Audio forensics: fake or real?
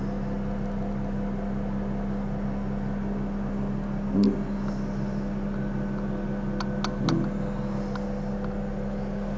real